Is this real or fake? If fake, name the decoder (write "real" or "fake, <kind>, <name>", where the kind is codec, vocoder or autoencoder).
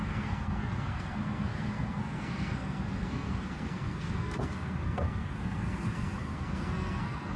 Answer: fake, codec, SNAC